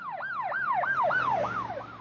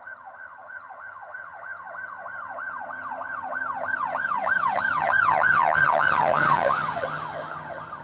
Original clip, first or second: first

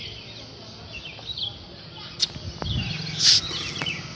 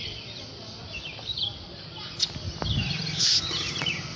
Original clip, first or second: first